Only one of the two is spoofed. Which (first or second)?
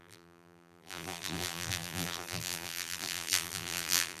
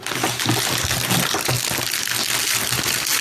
first